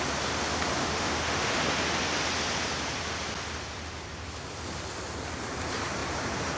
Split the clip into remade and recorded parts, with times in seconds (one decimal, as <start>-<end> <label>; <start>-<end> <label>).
0.0-0.8 recorded; 0.8-1.6 remade; 1.6-6.6 recorded